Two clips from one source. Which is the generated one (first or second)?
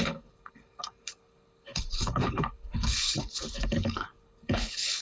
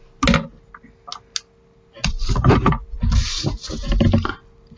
first